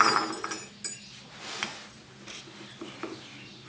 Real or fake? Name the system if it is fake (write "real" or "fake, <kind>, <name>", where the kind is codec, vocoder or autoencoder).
real